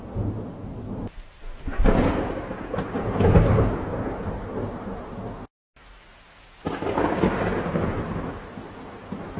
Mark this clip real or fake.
real